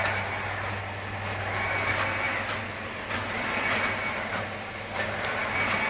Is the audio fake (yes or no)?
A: no